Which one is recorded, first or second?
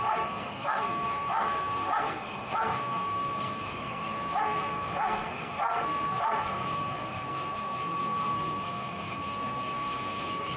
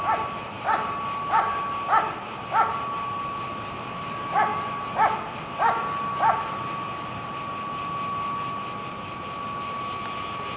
second